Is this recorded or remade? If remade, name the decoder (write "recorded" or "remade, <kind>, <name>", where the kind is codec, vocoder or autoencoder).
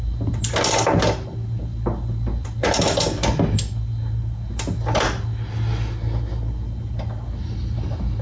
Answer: recorded